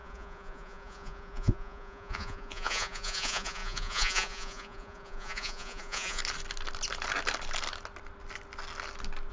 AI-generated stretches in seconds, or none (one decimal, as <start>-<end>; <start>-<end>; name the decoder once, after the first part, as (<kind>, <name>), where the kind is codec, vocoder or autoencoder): 0.0-6.2 (vocoder, Vocos)